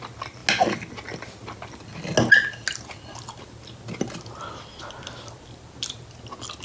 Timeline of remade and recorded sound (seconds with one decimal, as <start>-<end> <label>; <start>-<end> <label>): 0.0-6.6 recorded